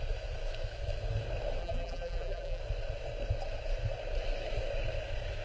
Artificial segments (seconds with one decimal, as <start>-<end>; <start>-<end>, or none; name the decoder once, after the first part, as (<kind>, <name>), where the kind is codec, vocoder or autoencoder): 1.6-2.6 (vocoder, BigVGAN v2)